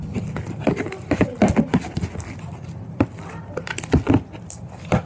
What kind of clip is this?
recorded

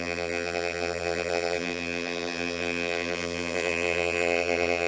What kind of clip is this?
remade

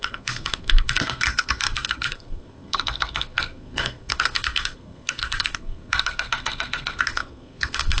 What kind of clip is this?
remade